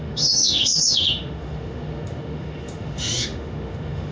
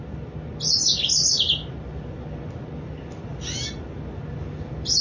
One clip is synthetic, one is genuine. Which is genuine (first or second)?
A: second